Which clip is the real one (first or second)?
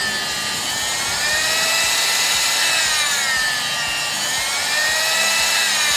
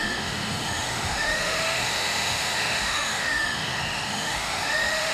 first